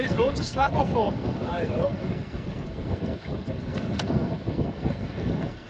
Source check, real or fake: fake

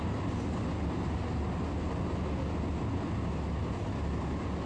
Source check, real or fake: real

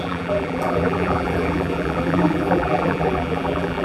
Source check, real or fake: fake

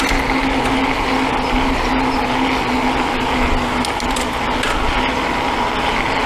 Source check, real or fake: real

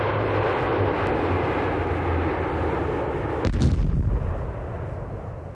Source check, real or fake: real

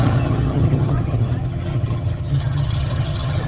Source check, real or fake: fake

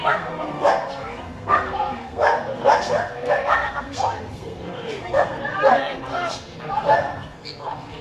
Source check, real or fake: fake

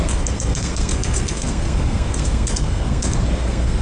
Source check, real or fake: fake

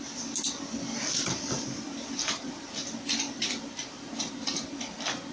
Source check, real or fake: real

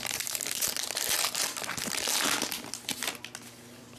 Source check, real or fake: real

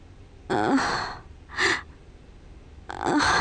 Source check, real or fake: real